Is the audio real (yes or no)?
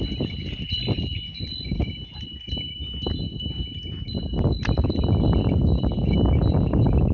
yes